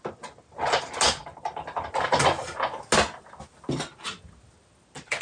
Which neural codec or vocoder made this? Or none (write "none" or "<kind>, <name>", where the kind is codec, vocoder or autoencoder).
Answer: none